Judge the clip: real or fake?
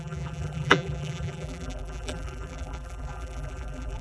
fake